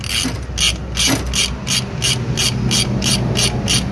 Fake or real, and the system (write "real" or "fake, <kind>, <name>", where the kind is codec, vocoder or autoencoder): real